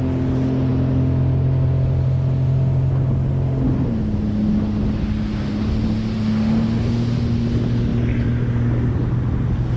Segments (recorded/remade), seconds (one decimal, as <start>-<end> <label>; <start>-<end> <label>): 0.0-9.8 recorded